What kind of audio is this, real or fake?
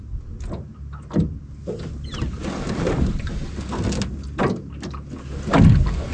real